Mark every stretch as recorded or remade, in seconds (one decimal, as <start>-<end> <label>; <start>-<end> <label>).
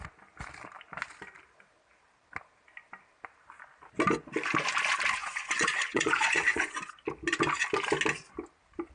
0.0-5.2 recorded; 5.2-6.9 remade; 6.9-8.9 recorded